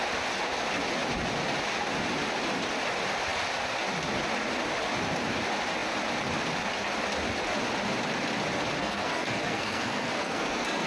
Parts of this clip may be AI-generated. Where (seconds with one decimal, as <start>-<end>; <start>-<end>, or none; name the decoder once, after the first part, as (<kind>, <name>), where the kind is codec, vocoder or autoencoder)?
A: 8.8-10.9 (codec, SNAC)